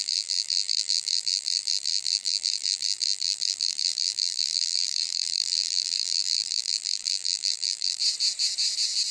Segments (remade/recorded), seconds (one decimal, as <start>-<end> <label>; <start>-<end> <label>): 0.0-8.0 remade; 8.0-9.1 recorded